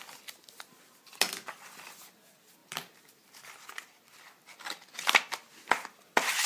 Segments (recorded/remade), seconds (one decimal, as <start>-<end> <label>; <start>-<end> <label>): 0.0-6.5 recorded